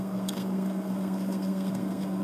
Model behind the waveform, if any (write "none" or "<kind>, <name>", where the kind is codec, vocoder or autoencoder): codec, SNAC